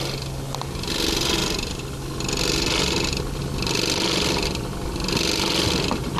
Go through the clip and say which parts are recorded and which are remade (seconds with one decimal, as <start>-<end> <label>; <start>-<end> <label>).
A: 0.0-6.2 recorded